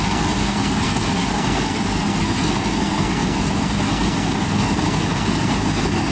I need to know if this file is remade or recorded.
remade